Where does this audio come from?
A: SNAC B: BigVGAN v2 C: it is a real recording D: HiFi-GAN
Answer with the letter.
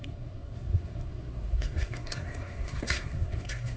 A